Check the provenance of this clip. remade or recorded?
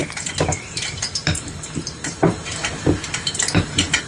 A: remade